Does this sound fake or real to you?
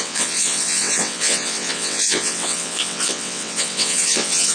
fake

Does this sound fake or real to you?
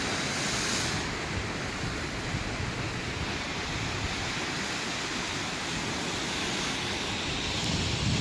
real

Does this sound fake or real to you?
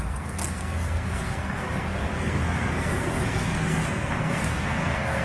fake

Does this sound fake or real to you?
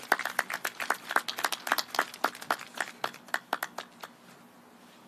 real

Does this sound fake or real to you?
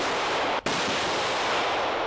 real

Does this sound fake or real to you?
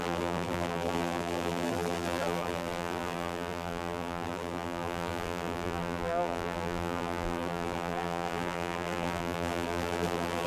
fake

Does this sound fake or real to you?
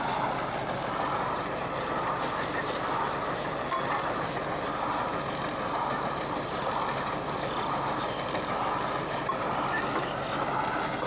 real